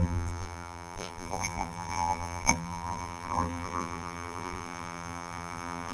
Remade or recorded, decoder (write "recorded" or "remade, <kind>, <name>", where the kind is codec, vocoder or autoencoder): remade, vocoder, BigVGAN v2